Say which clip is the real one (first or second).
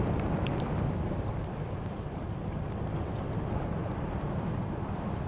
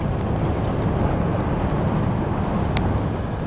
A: second